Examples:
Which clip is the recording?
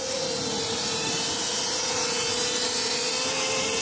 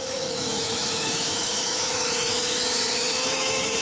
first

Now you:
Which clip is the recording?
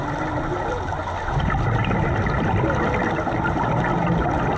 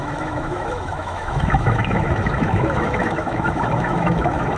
first